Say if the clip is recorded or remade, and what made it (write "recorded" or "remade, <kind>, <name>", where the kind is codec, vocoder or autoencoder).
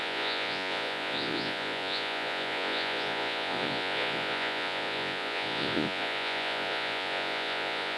remade, vocoder, Vocos